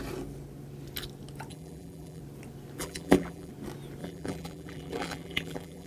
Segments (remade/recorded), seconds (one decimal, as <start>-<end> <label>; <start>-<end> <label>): 0.0-1.5 recorded; 1.5-2.2 remade; 2.2-2.8 recorded; 2.8-3.5 remade; 3.5-4.0 recorded; 4.0-5.9 remade